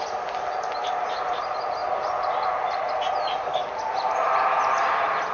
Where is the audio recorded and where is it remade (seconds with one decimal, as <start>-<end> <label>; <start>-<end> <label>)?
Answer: 0.0-5.3 recorded